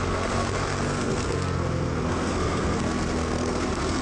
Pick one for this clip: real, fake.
fake